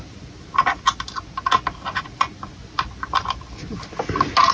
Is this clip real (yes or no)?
yes